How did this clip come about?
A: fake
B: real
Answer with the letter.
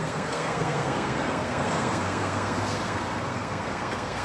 A